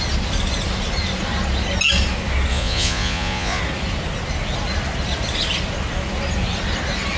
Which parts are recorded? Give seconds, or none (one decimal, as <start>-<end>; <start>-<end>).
0.0-2.5; 3.6-7.2